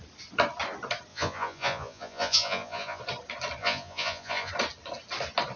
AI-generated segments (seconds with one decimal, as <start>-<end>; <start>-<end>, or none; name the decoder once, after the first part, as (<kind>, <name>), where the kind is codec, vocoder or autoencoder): 1.1-3.0 (vocoder, Vocos); 3.6-4.5